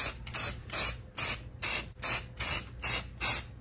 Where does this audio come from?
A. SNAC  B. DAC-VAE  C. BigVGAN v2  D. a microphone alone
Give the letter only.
D